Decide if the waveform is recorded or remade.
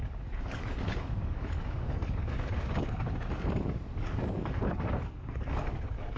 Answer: remade